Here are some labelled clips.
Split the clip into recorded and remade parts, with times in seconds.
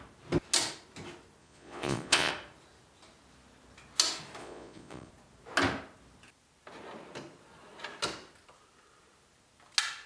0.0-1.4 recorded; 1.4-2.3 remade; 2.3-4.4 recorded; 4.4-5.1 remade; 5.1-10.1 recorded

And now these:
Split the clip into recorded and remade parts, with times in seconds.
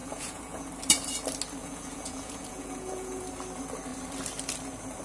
0.0-0.7 remade; 0.7-1.6 recorded; 1.6-3.2 remade; 3.2-5.0 recorded